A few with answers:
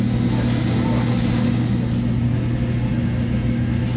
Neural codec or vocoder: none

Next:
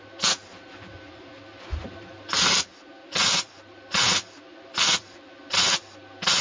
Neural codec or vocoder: none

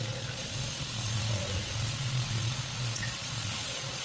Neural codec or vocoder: vocoder, Vocos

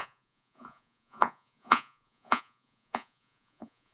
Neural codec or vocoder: vocoder, Vocos